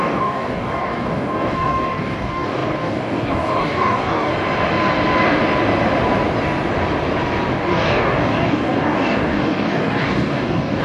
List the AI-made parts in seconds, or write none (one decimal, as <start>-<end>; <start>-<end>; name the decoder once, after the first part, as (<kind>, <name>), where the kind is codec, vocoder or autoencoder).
0.0-4.3 (codec, DAC); 7.5-10.8